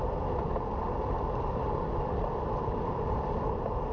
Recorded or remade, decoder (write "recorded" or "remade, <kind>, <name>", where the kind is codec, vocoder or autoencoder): recorded